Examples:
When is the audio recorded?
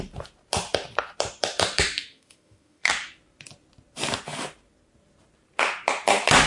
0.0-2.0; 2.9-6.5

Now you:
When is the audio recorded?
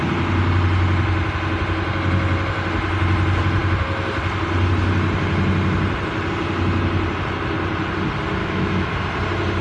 0.0-8.4; 8.9-9.6